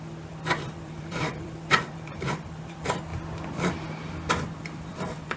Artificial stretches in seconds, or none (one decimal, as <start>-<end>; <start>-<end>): 0.0-3.1; 4.3-5.4